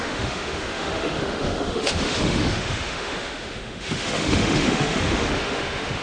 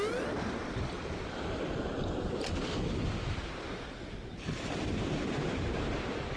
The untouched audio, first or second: second